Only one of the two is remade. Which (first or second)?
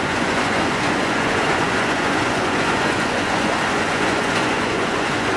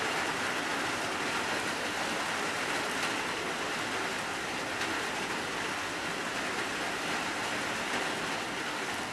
first